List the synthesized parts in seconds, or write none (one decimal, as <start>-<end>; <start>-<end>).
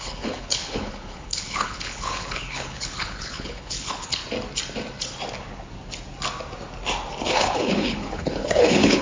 0.0-4.2; 7.2-9.0